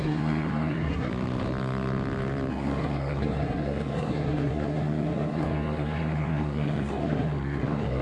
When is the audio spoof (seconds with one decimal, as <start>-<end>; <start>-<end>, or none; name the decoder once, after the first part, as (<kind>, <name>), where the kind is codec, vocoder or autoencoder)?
0.0-1.1 (codec, SNAC); 2.5-8.0